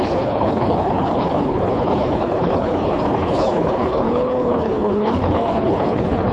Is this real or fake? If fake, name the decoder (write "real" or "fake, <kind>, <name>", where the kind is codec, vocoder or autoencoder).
fake, codec, HILCodec